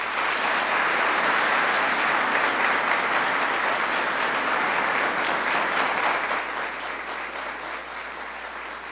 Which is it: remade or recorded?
recorded